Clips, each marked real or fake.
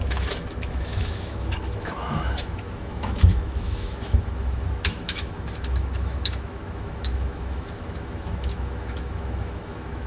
fake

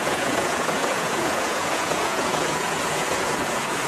fake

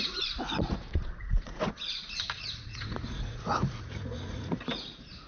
fake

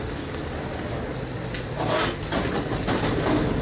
real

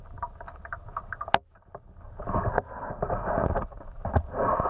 fake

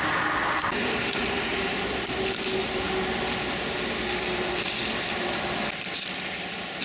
real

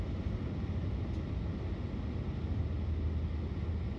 real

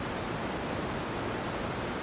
real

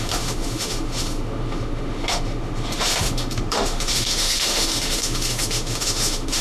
fake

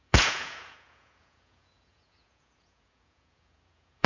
fake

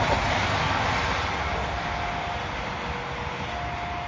real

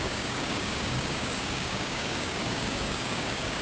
fake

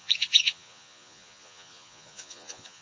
fake